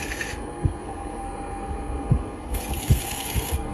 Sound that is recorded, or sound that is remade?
remade